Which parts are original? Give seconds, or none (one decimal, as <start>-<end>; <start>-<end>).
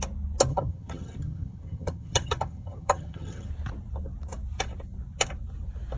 0.0-0.5; 3.5-6.0